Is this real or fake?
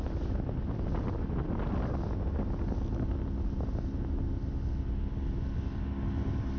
real